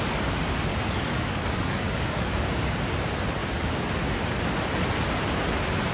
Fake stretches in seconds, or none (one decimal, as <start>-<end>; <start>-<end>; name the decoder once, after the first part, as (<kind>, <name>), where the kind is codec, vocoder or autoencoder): 0.7-2.3 (codec, DAC)